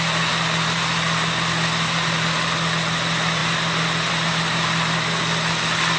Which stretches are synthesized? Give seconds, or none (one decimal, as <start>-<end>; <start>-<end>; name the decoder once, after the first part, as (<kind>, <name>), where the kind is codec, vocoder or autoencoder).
none